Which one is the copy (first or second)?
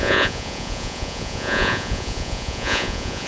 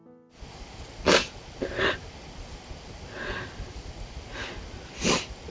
first